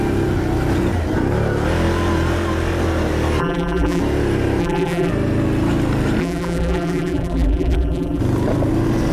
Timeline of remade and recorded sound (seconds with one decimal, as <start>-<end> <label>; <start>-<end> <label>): 0.0-3.4 recorded; 3.4-4.0 remade; 4.0-4.6 recorded; 4.6-5.1 remade; 5.1-6.2 recorded; 6.2-8.2 remade; 8.2-9.1 recorded